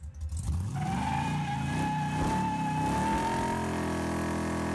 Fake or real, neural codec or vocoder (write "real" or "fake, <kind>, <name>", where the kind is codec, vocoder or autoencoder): real